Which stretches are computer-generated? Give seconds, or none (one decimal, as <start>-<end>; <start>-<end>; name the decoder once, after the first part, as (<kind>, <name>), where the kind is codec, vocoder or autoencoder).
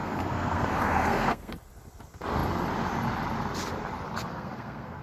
0.0-1.5 (codec, SNAC); 4.3-5.0